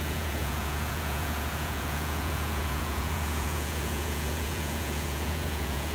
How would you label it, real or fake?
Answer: fake